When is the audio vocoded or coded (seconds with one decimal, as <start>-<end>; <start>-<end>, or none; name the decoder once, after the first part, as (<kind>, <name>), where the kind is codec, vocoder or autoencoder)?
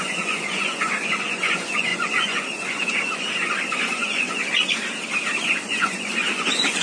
0.0-4.4 (vocoder, Vocos); 5.4-6.8